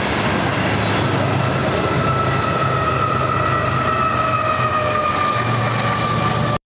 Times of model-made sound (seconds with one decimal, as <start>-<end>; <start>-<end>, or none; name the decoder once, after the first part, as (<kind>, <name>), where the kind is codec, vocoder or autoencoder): none